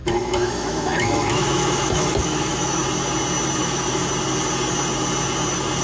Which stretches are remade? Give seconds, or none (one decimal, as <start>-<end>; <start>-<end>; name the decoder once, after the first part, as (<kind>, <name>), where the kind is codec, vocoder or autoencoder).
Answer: 0.0-2.8 (autoencoder, DAC-VAE); 3.6-4.0